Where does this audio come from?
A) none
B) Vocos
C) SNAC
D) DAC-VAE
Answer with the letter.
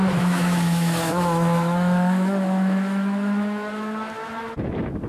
D